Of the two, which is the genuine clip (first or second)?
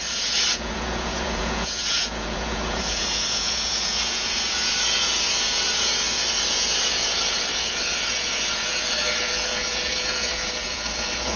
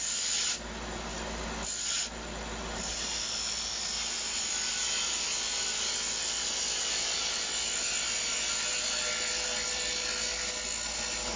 second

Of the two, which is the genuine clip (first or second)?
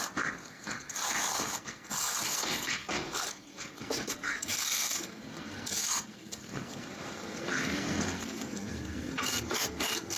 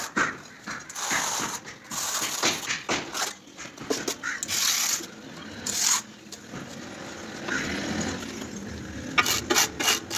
second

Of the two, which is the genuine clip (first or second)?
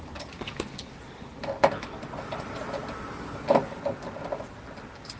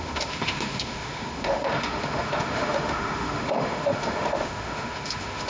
first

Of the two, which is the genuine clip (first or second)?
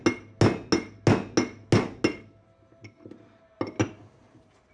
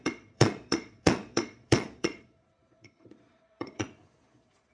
first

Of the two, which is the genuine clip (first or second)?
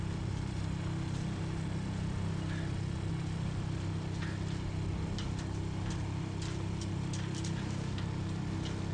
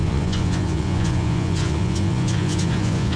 first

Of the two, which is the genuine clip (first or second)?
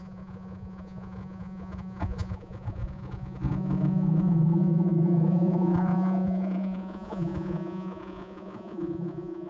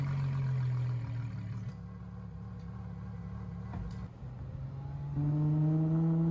second